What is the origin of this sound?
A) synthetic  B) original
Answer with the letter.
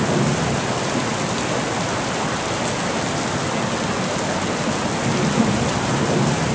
B